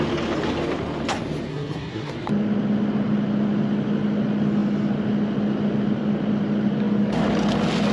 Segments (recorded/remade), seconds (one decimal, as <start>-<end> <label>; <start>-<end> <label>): 0.0-1.5 recorded; 1.5-2.1 remade; 2.1-7.9 recorded

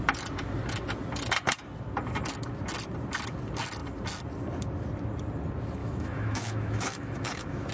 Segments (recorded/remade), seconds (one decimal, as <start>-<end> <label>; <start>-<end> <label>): 0.0-5.8 recorded; 5.8-7.7 remade

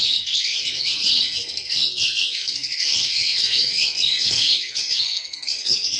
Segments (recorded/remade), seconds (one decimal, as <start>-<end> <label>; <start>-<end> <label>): 0.0-6.0 remade

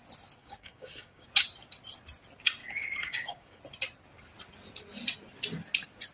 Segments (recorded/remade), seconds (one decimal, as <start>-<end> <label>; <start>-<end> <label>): 0.0-0.4 recorded; 0.4-1.3 remade; 1.3-2.6 recorded; 2.6-3.6 remade; 3.6-6.1 recorded

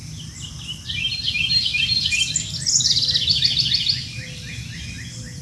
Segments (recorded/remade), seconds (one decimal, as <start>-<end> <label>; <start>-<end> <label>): 0.0-5.4 recorded